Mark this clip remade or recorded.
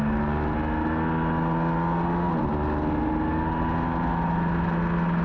recorded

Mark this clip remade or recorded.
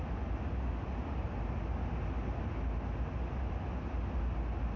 recorded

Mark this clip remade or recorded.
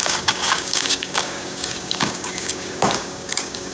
remade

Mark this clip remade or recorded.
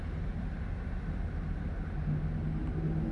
recorded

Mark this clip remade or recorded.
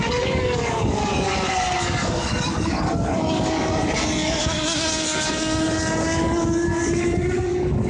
remade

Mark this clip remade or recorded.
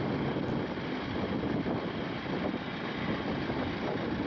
recorded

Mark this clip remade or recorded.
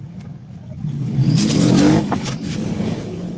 remade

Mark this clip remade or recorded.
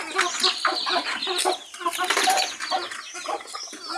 recorded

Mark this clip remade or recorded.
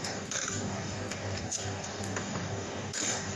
remade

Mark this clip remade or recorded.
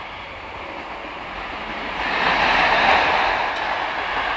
recorded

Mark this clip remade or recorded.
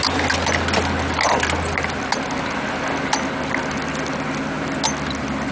recorded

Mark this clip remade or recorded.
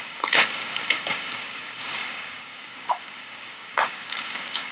remade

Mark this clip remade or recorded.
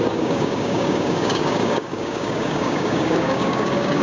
remade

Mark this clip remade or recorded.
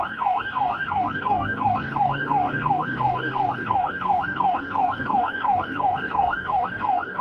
remade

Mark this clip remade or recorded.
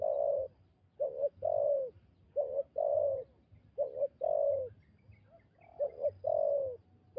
recorded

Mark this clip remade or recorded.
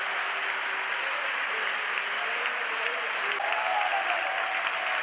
recorded